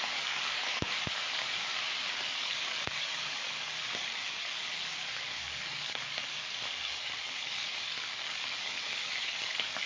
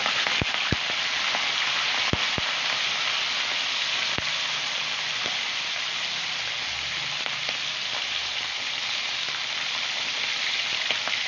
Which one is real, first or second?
second